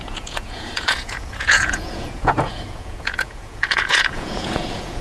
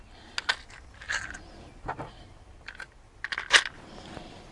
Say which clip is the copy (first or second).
first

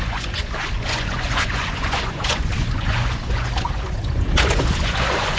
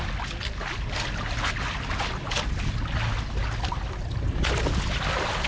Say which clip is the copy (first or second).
first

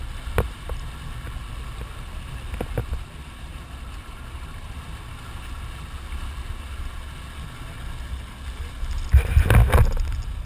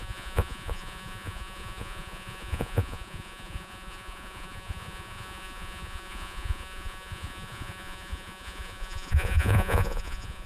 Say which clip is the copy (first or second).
second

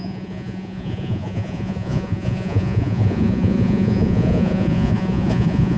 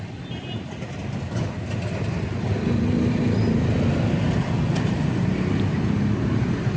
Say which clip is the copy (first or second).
first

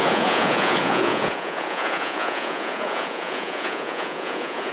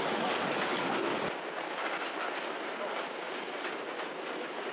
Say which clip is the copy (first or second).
first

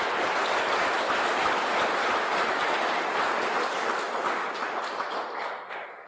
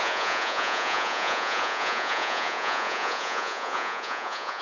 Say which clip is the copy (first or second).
second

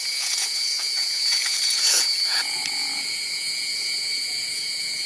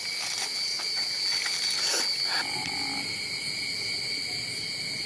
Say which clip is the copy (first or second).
first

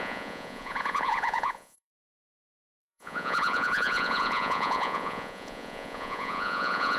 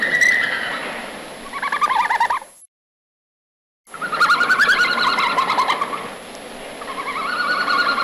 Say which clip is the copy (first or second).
first